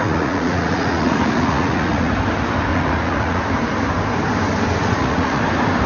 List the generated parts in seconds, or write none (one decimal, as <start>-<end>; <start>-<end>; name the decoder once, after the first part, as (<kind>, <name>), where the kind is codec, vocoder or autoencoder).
0.0-2.1 (vocoder, Vocos); 2.7-3.4; 4.8-5.4